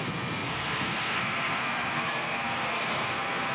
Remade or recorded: remade